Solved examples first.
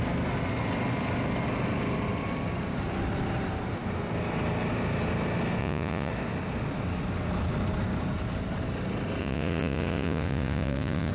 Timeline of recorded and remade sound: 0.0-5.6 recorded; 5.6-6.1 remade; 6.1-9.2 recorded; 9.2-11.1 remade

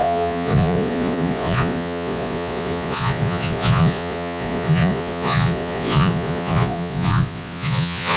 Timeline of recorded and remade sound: 0.0-8.2 remade

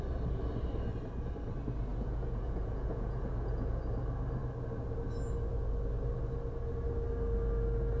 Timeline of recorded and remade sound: 0.0-1.9 recorded; 1.9-3.8 remade; 3.8-8.0 recorded

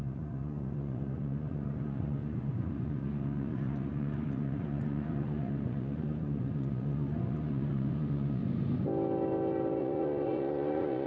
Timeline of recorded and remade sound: 0.0-8.4 remade; 8.4-9.8 recorded; 9.8-11.1 remade

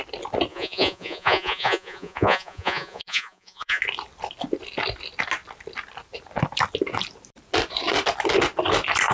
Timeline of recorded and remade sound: 0.0-0.5 recorded; 0.5-3.8 remade; 3.8-9.1 recorded

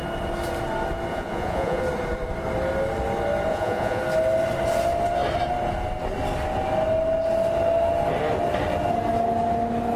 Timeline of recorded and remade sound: 0.0-1.1 recorded; 1.1-1.8 remade; 1.8-3.5 recorded; 3.5-4.0 remade; 4.0-10.0 recorded